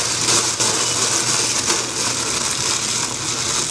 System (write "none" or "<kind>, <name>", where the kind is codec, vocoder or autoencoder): none